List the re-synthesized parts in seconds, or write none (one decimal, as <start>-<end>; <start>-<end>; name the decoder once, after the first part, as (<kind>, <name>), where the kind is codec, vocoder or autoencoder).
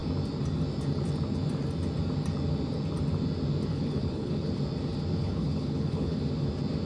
3.7-4.5 (codec, HILCodec); 5.2-6.2